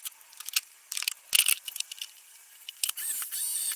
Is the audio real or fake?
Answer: fake